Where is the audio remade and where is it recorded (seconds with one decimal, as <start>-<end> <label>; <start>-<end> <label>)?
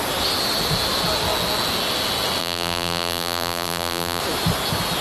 0.0-2.4 recorded; 2.4-4.2 remade; 4.2-5.0 recorded